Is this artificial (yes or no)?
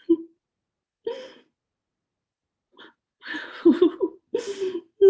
yes